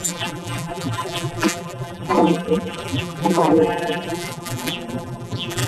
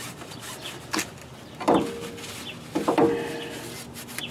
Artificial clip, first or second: first